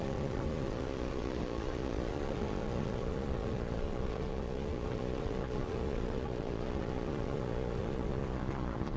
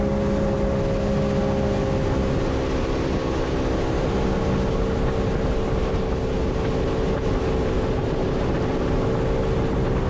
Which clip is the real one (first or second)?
second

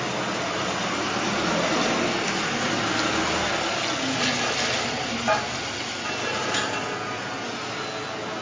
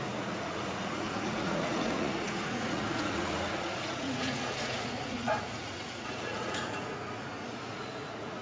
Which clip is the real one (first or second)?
first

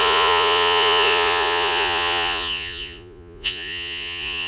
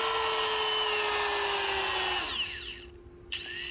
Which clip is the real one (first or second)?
second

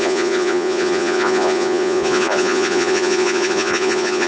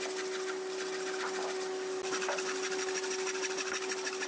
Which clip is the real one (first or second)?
second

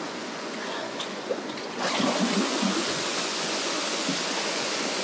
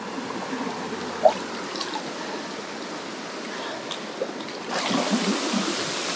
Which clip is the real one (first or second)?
second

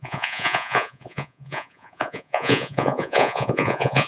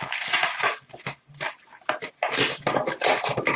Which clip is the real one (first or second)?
second